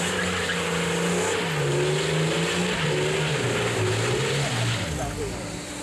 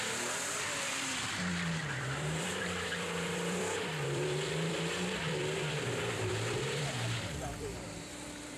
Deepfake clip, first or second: second